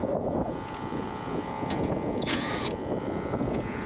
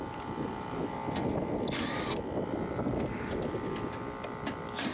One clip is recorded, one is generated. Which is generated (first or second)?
first